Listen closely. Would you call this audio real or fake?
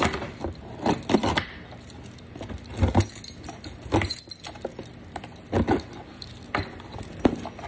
real